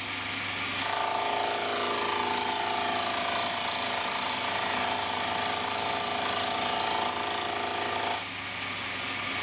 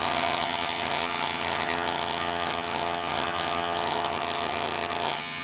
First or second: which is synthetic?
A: second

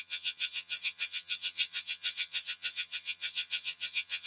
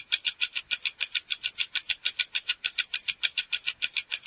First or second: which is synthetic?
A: first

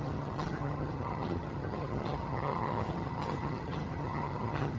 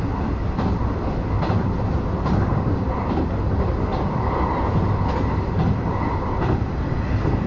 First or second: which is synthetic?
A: first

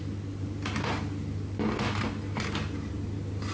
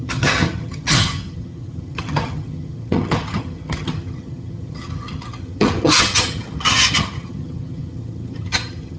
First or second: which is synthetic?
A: second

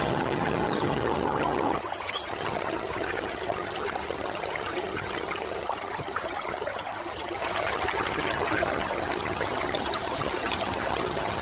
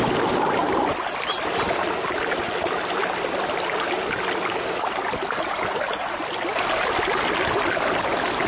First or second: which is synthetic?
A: first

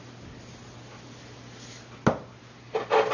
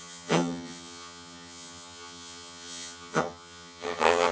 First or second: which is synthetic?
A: second